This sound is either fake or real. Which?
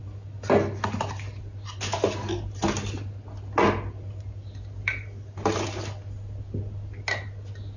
real